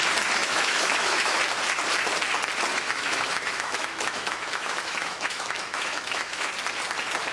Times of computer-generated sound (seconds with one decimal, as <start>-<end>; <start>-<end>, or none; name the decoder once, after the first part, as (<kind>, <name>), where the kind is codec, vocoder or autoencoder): 0.4-1.4 (autoencoder, DAC-VAE); 2.7-6.5